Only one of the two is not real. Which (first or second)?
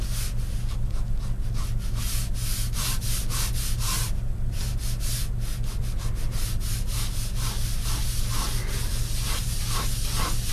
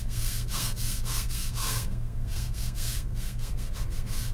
second